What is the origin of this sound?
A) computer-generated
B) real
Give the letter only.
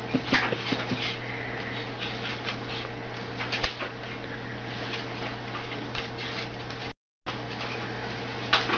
B